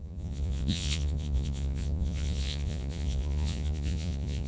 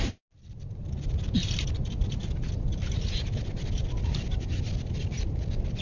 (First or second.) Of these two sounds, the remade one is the first